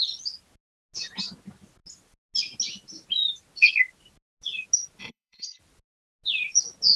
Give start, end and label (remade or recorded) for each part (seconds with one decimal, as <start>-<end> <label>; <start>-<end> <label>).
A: 0.0-5.0 recorded; 5.0-5.6 remade; 5.6-7.0 recorded